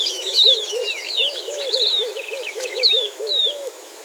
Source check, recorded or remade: remade